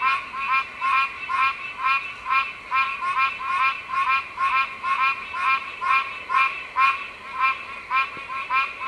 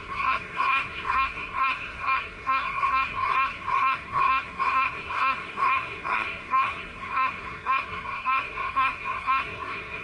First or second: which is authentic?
first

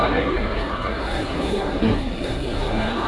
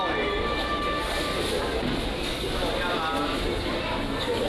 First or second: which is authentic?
second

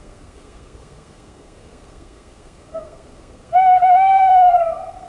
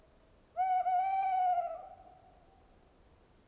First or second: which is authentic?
second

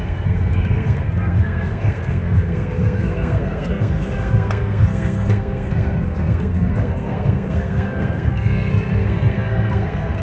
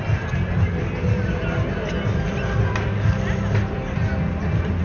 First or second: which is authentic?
second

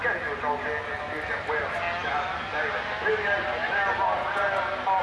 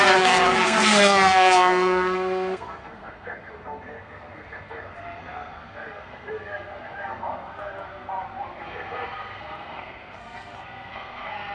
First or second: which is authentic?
first